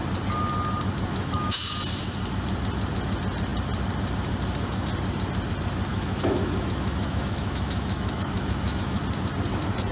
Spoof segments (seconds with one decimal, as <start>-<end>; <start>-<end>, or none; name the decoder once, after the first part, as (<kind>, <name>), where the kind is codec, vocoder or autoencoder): 1.1-1.7 (autoencoder, DAC-VAE); 5.9-9.0